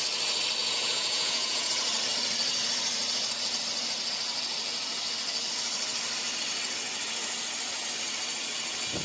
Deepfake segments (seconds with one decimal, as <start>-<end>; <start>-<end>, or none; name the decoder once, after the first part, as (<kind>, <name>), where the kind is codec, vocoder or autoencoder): 0.6-1.7 (vocoder, Vocos)